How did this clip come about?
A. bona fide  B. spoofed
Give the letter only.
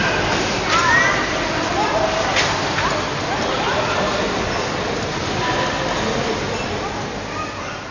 A